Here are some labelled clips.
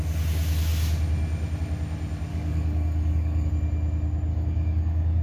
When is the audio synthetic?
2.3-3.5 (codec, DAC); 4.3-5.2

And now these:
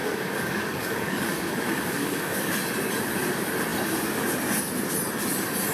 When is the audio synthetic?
0.0-2.5 (codec, DAC)

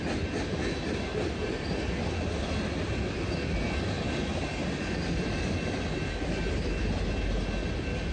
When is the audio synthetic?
none

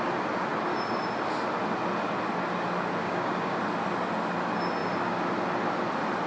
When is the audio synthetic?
3.0-3.6 (codec, DAC)

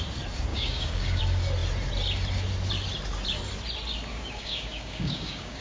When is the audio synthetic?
0.5-1.2 (codec, DAC); 4.1-5.6

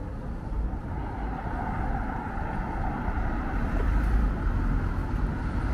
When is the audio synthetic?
none

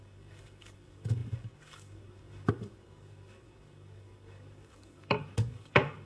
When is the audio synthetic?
0.0-6.1 (codec, DAC)

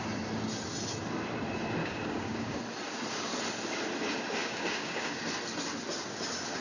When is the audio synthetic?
1.8-2.6 (codec, DAC); 4.4-5.2